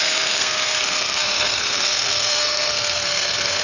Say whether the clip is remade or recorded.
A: remade